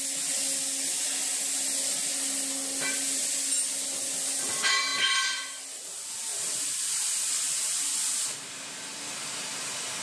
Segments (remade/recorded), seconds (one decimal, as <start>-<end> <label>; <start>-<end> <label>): 0.0-10.0 recorded